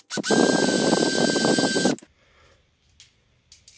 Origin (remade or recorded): recorded